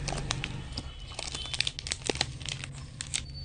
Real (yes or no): yes